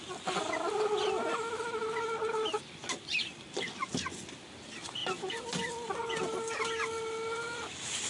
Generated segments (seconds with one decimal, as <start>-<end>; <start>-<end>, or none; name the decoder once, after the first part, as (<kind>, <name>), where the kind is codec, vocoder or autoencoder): none